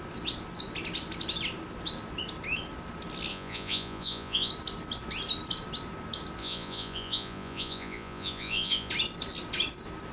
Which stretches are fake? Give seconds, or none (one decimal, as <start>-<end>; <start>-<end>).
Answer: 3.3-4.5; 6.4-8.9